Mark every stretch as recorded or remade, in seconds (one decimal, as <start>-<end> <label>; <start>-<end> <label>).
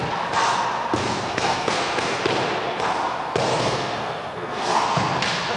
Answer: 0.0-1.0 recorded; 1.0-2.2 remade; 2.2-3.5 recorded; 3.5-5.0 remade; 5.0-5.6 recorded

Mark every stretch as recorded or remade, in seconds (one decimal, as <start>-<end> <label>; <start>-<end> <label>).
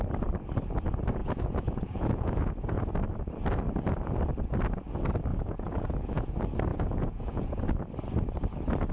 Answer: 0.0-1.2 recorded; 1.2-2.9 remade; 2.9-5.3 recorded; 5.3-6.3 remade; 6.3-6.7 recorded; 6.7-7.6 remade; 7.6-8.9 recorded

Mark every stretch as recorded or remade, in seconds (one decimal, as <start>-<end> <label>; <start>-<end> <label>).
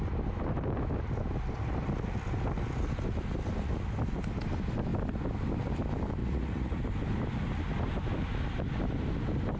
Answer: 0.0-6.2 recorded; 6.2-6.8 remade; 6.8-9.6 recorded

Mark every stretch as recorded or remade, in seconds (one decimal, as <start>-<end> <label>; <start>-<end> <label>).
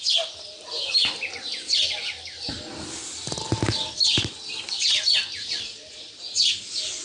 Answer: 0.0-7.0 recorded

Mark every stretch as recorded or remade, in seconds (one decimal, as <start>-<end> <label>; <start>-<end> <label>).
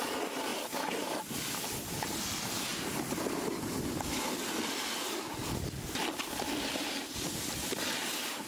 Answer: 0.0-8.5 recorded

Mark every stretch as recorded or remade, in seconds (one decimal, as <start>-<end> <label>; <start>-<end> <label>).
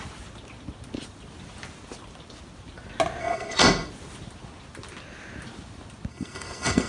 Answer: 0.0-3.2 recorded; 3.2-3.9 remade; 3.9-6.1 recorded; 6.1-6.9 remade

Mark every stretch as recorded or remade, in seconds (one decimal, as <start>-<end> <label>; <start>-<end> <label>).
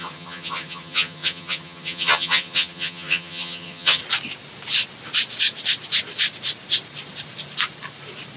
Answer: 0.0-4.0 remade; 4.0-8.4 recorded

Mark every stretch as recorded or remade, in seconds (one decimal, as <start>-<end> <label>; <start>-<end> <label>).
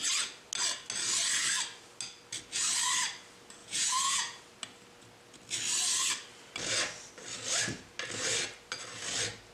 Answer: 0.0-3.6 recorded; 3.6-4.4 remade; 4.4-9.5 recorded